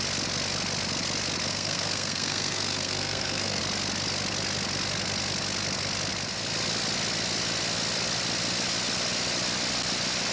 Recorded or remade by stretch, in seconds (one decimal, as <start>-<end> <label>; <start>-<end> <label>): 0.0-1.5 recorded; 1.5-3.6 remade; 3.6-10.3 recorded